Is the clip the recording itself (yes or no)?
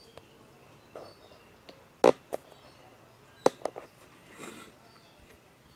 yes